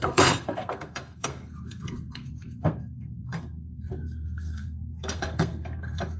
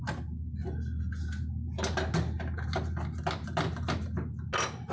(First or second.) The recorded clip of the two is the second